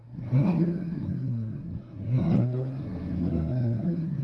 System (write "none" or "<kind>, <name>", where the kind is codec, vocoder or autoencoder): codec, SNAC